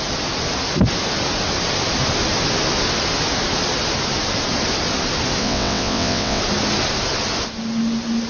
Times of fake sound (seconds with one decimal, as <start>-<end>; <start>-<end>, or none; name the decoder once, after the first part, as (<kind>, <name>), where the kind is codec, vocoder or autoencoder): 5.4-6.4 (vocoder, WaveNeXt)